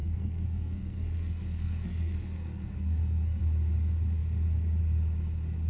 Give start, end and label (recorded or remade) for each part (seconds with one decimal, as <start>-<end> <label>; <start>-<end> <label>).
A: 0.0-3.4 remade; 3.4-5.7 recorded